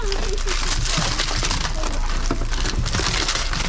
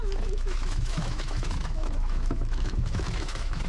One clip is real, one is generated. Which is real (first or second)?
first